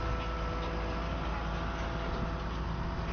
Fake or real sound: real